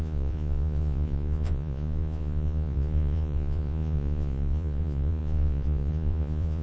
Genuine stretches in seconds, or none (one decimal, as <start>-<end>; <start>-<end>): none